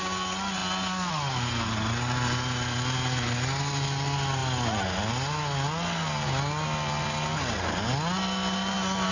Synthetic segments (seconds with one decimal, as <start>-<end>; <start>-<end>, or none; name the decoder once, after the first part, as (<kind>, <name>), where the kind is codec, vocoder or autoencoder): none